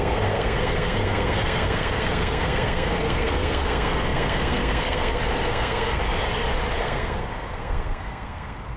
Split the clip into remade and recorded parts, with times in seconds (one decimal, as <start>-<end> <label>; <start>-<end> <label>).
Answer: 0.0-6.0 remade; 6.0-6.8 recorded; 6.8-8.8 remade